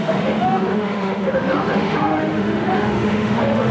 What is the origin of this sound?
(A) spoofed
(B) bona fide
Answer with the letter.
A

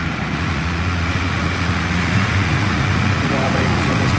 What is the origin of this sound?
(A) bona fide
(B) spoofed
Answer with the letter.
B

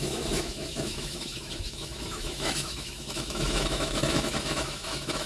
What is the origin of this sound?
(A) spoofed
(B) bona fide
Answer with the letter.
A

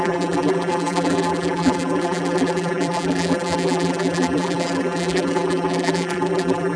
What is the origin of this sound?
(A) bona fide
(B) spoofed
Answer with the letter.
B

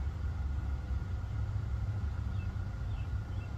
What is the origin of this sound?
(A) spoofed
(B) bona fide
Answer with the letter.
B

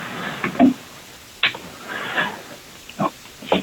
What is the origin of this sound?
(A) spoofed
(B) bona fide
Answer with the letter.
B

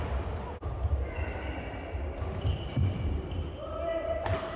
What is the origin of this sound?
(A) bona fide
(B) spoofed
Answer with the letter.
A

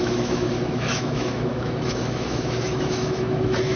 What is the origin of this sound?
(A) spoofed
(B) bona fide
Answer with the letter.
A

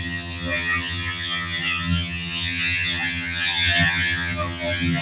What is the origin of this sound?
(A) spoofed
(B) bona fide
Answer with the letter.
A